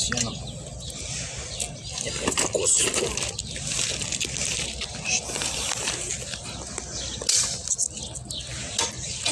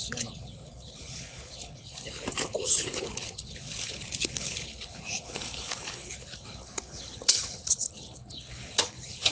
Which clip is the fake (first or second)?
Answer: second